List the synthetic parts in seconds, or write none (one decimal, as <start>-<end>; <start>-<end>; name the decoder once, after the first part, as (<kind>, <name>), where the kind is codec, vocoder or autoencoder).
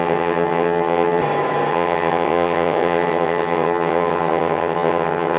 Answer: 0.0-1.2 (vocoder, HiFi-GAN); 1.7-5.4